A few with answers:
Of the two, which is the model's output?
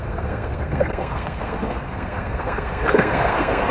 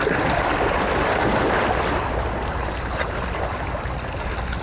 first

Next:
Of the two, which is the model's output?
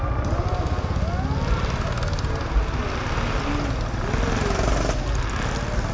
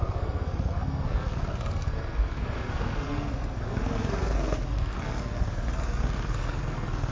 second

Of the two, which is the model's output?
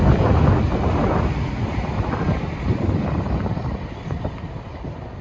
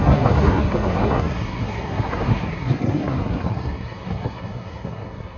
second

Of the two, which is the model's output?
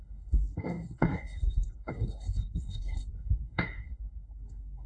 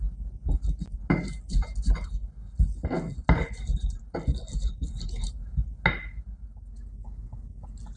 first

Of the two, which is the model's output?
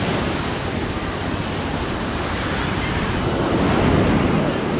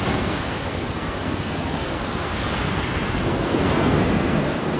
second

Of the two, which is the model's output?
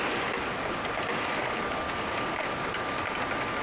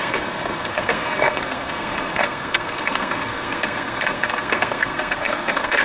second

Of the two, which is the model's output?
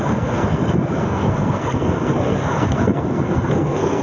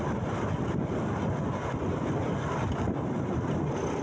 first